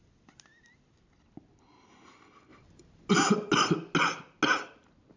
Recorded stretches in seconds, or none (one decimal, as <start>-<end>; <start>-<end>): 0.0-5.2